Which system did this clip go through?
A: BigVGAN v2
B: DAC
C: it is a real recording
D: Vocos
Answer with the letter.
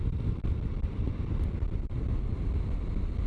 A